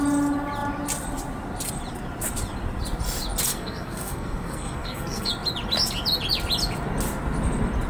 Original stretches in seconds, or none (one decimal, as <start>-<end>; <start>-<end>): 0.0-3.5; 5.3-7.9